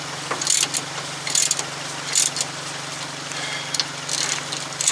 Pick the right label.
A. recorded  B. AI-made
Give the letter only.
A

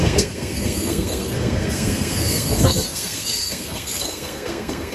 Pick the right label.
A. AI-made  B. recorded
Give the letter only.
A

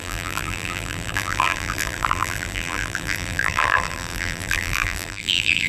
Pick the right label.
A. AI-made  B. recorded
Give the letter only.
A